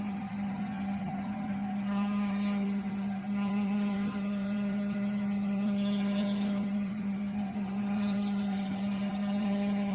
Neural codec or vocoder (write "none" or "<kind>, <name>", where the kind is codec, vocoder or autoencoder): vocoder, HiFi-GAN